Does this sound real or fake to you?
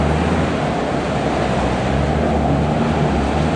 real